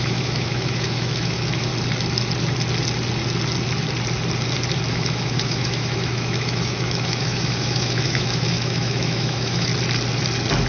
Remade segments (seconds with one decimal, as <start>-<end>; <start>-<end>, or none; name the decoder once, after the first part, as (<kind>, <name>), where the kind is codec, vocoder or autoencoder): 0.0-1.7 (autoencoder, DAC-VAE); 4.9-9.7